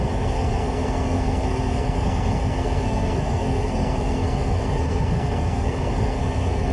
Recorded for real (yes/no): no